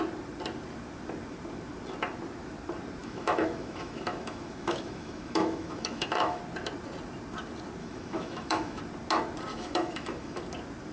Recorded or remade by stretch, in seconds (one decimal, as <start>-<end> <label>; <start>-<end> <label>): 0.0-3.0 recorded; 3.0-6.4 remade; 6.4-7.8 recorded; 7.8-8.8 remade; 8.8-9.5 recorded; 9.5-10.4 remade; 10.4-10.9 recorded